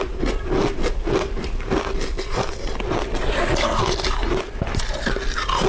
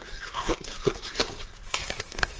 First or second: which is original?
first